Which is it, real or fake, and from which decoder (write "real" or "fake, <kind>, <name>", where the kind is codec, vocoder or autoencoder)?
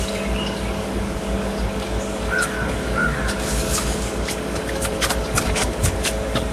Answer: fake, codec, DAC